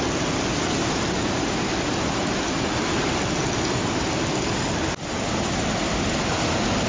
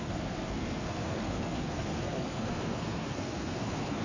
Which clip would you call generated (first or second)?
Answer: second